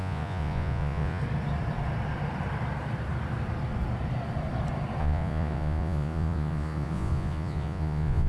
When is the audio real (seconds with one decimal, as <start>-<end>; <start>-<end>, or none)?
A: 1.2-5.0